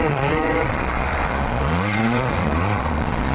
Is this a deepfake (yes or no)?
yes